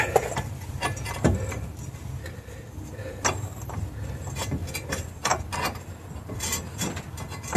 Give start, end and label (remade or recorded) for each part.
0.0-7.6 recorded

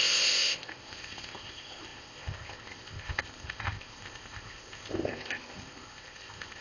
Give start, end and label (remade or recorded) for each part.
0.0-6.6 remade

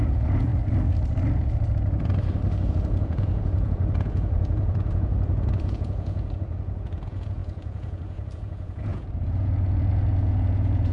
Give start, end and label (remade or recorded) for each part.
0.0-0.5 remade; 0.5-2.7 recorded; 2.7-10.9 remade

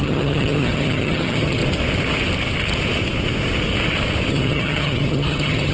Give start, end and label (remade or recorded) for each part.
0.0-1.6 remade; 1.6-4.3 recorded; 4.3-5.7 remade

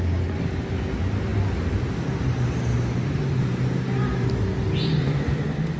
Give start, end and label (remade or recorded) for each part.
0.0-5.8 recorded

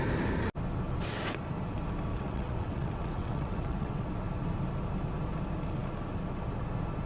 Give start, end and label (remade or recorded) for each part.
0.0-2.1 recorded; 2.1-4.1 remade; 4.1-7.1 recorded